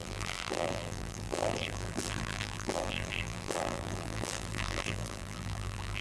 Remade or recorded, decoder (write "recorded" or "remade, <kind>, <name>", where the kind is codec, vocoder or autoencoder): remade, vocoder, BigVGAN v2